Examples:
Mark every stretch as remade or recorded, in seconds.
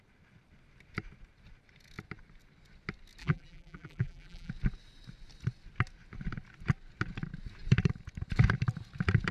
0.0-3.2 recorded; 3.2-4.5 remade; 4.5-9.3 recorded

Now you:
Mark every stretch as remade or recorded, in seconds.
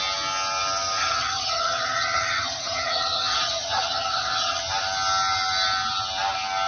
0.0-1.0 recorded; 1.0-4.6 remade; 4.6-6.7 recorded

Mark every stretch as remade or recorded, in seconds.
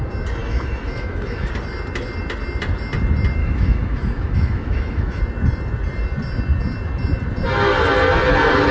0.0-0.4 recorded; 0.4-1.5 remade; 1.5-3.4 recorded; 3.4-5.2 remade; 5.2-8.7 recorded